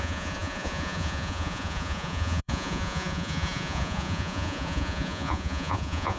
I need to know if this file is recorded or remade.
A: remade